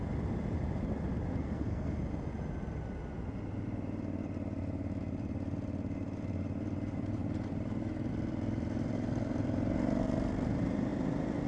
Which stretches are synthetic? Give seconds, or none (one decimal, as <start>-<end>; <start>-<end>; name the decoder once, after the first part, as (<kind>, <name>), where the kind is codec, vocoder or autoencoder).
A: 1.3-2.0 (codec, SNAC)